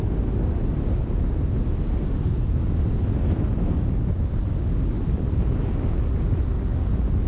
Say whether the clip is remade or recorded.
recorded